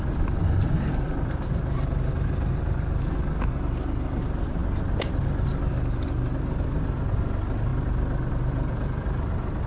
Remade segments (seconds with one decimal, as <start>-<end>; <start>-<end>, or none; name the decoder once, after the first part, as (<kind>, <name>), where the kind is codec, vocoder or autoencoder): 0.0-9.7 (vocoder, BigVGAN v2)